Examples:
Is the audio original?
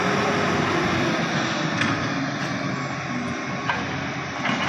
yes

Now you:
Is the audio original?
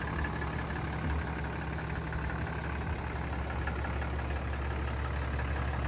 yes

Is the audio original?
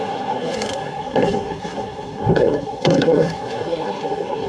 no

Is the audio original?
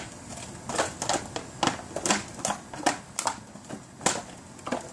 yes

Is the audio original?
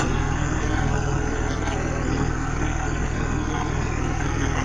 no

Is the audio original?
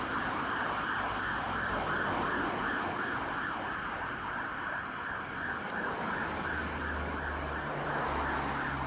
yes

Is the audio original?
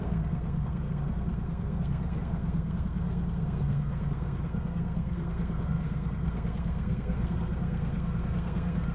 no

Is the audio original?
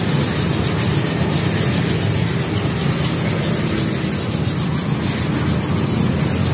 yes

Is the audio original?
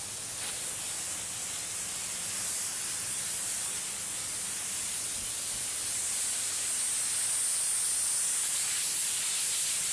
yes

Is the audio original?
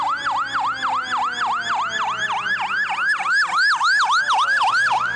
yes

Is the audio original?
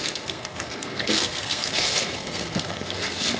no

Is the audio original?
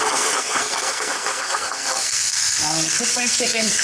no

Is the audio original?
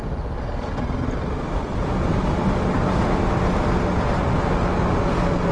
yes